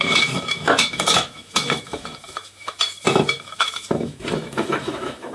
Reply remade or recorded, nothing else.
remade